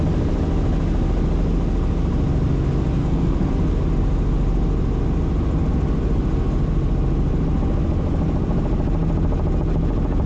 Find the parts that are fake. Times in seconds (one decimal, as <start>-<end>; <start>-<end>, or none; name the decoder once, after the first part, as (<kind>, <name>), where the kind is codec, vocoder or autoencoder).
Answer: 3.0-3.5 (codec, SNAC)